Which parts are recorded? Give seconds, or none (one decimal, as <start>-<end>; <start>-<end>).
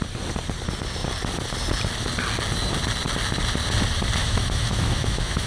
0.0-4.2